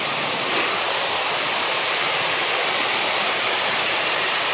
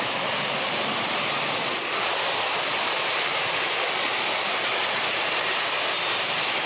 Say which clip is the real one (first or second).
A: second